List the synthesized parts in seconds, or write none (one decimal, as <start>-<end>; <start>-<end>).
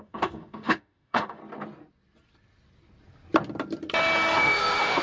0.0-1.4; 4.4-5.0